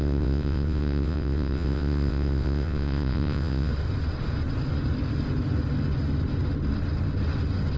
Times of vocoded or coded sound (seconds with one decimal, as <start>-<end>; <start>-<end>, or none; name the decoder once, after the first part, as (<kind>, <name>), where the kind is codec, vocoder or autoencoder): 0.0-3.7 (vocoder, WaveNeXt)